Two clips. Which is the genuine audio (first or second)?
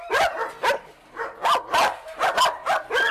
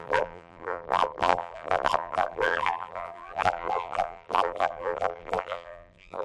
first